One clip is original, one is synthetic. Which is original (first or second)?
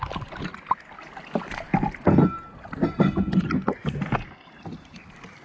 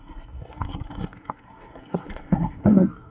first